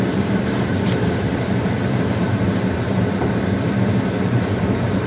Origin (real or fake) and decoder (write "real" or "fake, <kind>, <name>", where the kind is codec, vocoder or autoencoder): fake, vocoder, BigVGAN v2